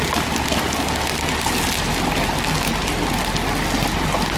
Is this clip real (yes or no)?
yes